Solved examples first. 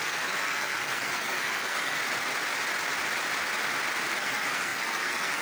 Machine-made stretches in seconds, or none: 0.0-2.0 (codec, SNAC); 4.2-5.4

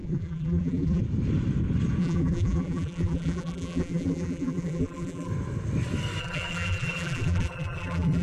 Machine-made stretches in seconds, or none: 0.0-1.0 (vocoder, BigVGAN v2); 2.0-5.3; 6.2-8.2